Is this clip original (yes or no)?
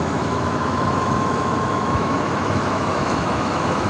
no